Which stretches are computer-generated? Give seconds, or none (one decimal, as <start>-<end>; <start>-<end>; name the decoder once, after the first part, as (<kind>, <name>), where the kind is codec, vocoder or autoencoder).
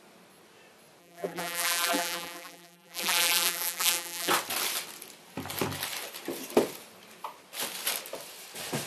1.0-4.3 (vocoder, BigVGAN v2)